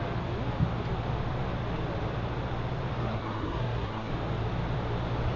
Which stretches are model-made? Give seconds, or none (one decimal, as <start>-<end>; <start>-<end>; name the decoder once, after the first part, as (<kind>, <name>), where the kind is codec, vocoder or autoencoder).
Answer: 3.0-4.1 (codec, SNAC)